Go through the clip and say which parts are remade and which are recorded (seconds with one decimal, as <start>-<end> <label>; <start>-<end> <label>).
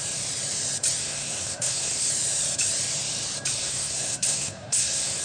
0.0-1.0 recorded; 1.0-2.1 remade; 2.1-3.6 recorded; 3.6-5.2 remade